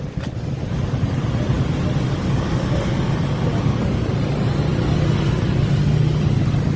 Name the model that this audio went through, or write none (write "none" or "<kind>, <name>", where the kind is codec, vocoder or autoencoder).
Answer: none